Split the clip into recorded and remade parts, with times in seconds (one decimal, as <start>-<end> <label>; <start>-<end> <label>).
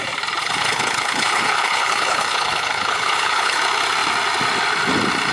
0.0-0.4 recorded; 0.4-3.6 remade; 3.6-5.3 recorded